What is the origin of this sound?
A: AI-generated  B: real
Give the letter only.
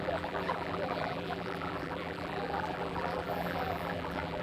A